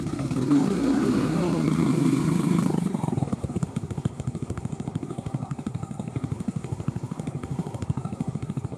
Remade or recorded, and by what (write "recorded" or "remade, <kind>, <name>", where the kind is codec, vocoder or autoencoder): remade, codec, SNAC